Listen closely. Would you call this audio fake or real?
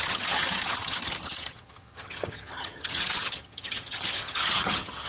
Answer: fake